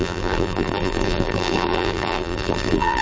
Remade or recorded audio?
remade